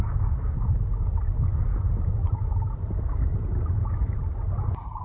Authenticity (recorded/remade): recorded